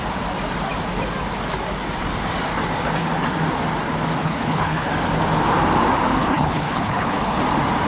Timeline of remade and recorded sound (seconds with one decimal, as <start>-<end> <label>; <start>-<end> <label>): 0.0-4.2 recorded; 4.2-4.9 remade; 4.9-6.2 recorded; 6.2-7.4 remade; 7.4-7.9 recorded